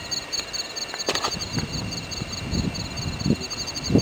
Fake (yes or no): no